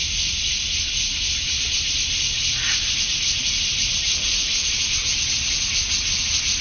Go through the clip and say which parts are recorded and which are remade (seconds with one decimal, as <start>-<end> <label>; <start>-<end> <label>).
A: 0.0-1.7 remade; 1.7-6.6 recorded